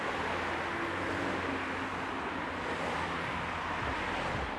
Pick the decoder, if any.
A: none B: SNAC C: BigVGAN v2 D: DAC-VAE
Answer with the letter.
A